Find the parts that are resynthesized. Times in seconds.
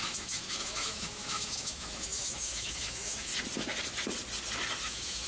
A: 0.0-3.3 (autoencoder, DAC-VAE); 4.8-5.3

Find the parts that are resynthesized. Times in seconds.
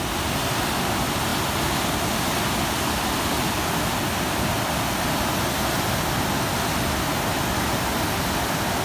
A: none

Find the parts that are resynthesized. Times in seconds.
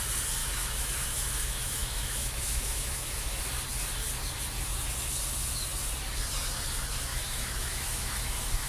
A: 0.4-3.4 (autoencoder, DAC-VAE); 7.1-8.7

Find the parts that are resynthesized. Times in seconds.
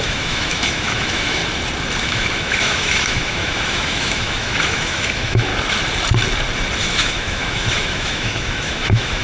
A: 0.0-1.4 (autoencoder, DAC-VAE); 2.0-5.5; 6.8-9.2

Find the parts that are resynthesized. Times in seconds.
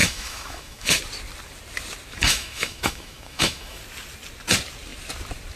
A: 0.0-1.0 (autoencoder, DAC-VAE); 2.2-3.8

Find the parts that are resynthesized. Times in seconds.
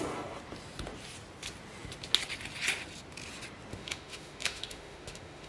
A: 3.7-5.5 (autoencoder, DAC-VAE)